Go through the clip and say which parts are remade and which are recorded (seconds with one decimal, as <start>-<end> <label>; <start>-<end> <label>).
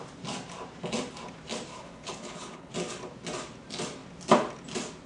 0.0-1.7 recorded; 1.7-2.7 remade; 2.7-5.1 recorded